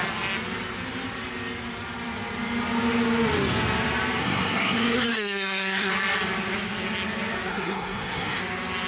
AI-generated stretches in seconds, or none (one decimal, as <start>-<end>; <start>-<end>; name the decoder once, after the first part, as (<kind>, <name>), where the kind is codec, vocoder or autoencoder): 4.2-5.9 (codec, SNAC); 7.5-8.4